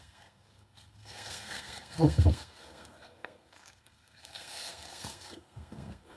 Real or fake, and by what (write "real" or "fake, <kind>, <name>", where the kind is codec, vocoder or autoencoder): fake, codec, SNAC